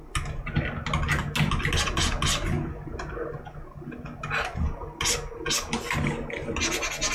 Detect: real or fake real